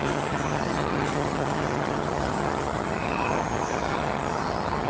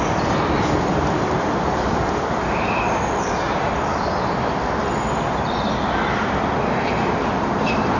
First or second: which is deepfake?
first